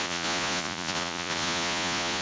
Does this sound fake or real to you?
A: fake